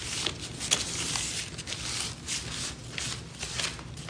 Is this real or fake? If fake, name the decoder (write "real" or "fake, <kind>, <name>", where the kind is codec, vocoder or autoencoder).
real